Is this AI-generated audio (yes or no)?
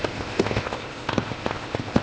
yes